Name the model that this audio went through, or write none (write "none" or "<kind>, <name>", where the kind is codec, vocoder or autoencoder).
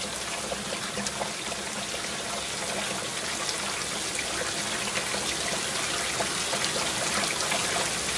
none